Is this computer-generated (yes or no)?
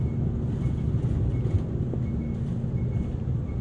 no